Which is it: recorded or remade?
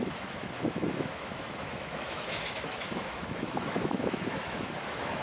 remade